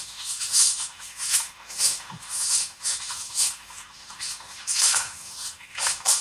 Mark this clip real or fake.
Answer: fake